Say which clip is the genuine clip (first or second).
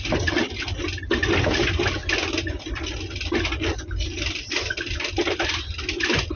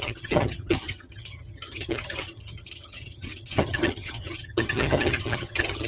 first